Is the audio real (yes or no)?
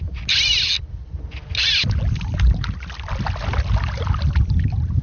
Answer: yes